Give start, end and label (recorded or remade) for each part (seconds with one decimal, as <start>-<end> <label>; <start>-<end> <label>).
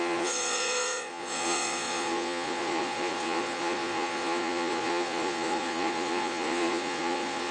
0.0-7.5 remade